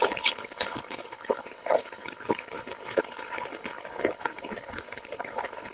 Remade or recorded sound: remade